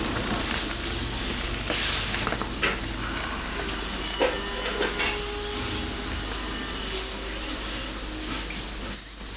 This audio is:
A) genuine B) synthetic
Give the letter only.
A